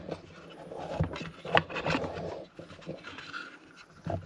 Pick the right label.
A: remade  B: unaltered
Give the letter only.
B